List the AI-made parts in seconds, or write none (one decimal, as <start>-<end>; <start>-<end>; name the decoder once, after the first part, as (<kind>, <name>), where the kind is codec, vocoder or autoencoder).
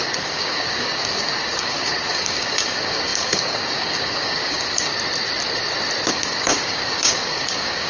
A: 0.0-4.9 (codec, DAC); 6.1-7.9